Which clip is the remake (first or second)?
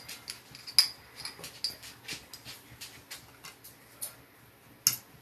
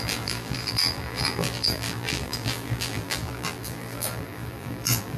second